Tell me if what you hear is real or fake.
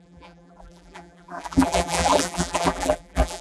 fake